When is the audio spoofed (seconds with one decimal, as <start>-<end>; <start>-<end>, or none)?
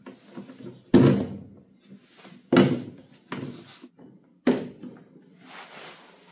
none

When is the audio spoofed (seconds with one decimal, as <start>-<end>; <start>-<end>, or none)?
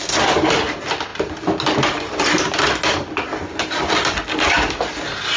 none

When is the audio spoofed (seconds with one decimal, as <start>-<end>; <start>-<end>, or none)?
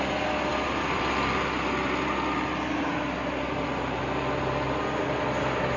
none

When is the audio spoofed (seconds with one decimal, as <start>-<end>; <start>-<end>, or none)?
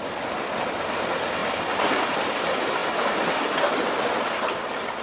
0.0-1.4; 2.0-2.8; 3.4-5.0